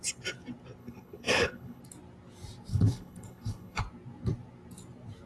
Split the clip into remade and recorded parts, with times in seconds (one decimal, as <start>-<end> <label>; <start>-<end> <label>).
0.0-0.8 recorded; 0.8-1.8 remade; 1.8-2.7 recorded; 2.7-3.8 remade; 3.8-5.3 recorded